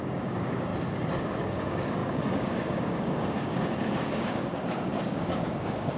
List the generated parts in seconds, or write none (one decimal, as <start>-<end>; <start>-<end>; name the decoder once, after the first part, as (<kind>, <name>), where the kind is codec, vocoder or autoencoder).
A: 0.0-0.7 (codec, DAC); 1.3-6.0